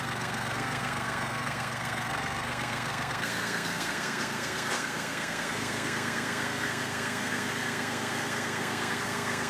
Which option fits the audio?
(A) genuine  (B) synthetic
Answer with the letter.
B